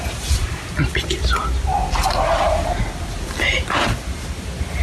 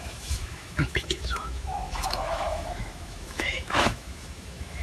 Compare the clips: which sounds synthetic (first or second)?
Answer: second